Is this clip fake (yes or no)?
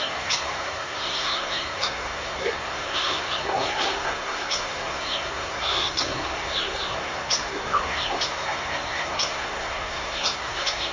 yes